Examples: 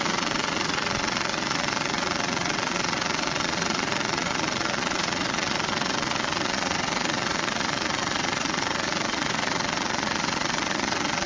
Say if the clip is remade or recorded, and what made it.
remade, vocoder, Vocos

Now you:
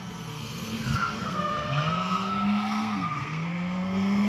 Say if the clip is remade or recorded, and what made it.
remade, codec, SNAC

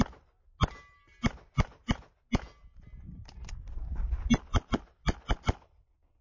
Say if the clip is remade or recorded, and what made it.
recorded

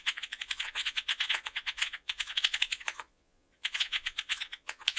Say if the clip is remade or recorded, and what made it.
remade, vocoder, Vocos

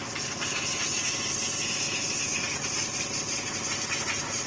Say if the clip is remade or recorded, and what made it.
recorded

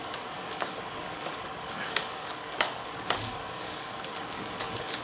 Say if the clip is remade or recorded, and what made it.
remade, codec, DAC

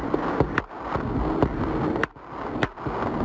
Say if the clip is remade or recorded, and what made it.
recorded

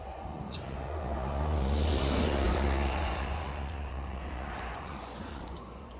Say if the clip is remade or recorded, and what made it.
remade, vocoder, Vocos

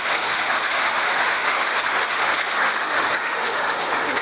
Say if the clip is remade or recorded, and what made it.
remade, autoencoder, DAC-VAE